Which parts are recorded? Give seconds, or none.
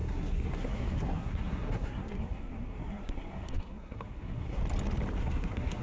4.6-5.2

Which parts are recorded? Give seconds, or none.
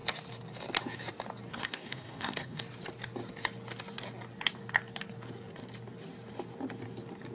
0.0-1.5; 2.6-7.3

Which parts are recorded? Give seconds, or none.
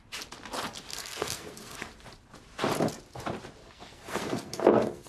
0.0-0.9; 1.9-3.6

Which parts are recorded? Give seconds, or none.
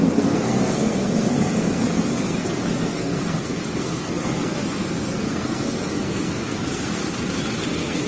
7.0-7.6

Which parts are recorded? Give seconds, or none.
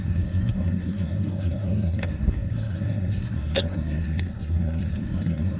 none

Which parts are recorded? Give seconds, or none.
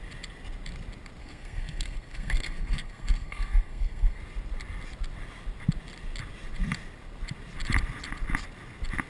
0.0-1.2; 4.2-9.1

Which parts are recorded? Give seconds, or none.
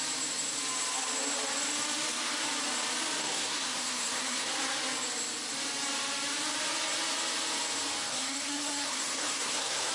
0.0-3.2; 4.5-8.1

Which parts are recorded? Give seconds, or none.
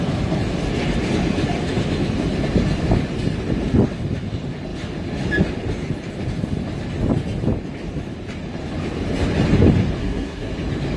0.0-10.0; 10.5-11.0